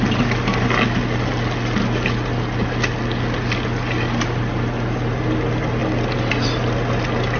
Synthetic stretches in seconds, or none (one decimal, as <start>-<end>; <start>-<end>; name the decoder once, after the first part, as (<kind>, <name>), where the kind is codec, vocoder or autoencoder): none